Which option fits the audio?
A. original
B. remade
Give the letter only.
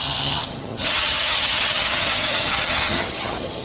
B